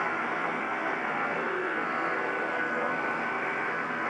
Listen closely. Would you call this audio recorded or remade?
remade